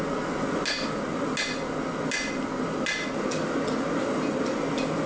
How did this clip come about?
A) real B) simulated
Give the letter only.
A